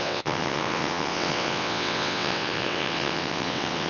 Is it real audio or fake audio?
fake